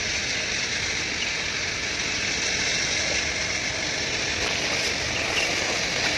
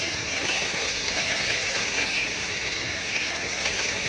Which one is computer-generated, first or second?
second